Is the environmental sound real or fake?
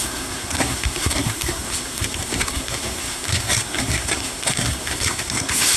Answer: fake